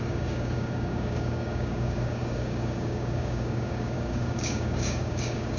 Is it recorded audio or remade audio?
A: remade